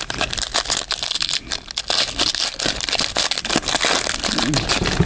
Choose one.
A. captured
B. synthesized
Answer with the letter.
A